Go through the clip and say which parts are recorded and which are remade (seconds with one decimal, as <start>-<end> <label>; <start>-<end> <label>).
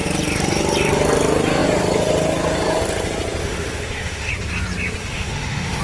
0.0-3.4 recorded; 3.4-4.3 remade; 4.3-5.0 recorded; 5.0-5.8 remade